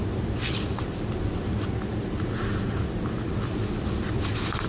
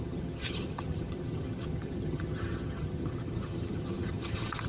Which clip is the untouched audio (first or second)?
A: first